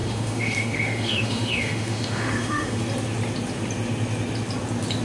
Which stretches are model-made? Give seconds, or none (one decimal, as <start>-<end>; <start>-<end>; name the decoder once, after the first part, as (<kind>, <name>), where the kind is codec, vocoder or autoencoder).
0.0-2.8 (autoencoder, DAC-VAE)